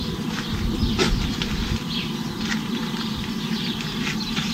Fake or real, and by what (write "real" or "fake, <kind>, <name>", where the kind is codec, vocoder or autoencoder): fake, vocoder, BigVGAN v2